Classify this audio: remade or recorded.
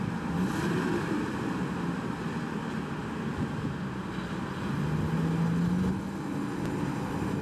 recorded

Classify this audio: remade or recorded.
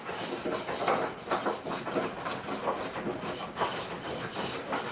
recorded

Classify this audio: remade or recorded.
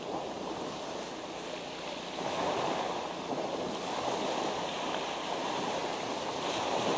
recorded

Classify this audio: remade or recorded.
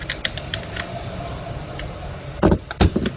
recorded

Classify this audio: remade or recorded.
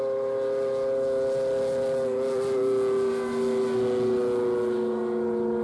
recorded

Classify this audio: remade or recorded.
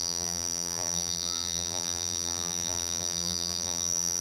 remade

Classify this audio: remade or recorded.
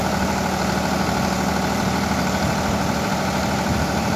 remade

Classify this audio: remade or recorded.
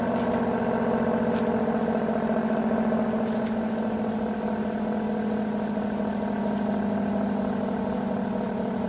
recorded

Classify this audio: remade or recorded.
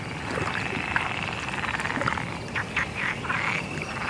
recorded